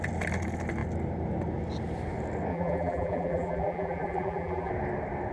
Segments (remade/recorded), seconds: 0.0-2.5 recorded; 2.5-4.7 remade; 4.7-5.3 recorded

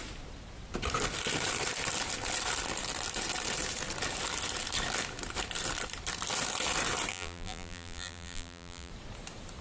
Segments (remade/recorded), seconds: 0.0-7.1 recorded; 7.1-8.9 remade; 8.9-9.6 recorded

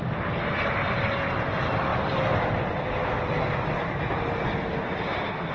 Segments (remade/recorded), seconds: 0.0-5.5 recorded

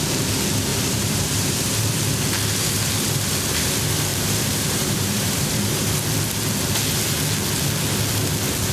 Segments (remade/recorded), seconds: 0.0-0.7 recorded; 0.7-1.7 remade; 1.7-4.1 recorded; 4.1-5.9 remade; 5.9-8.7 recorded

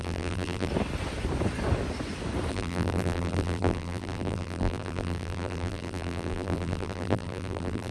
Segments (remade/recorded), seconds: 0.0-0.7 remade; 0.7-2.5 recorded; 2.5-7.9 remade